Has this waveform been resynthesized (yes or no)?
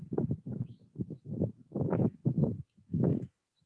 yes